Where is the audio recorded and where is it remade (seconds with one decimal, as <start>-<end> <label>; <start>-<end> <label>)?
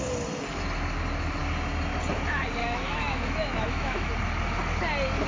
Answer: 0.0-2.6 recorded; 2.6-4.1 remade; 4.1-5.3 recorded